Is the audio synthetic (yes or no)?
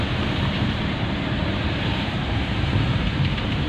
yes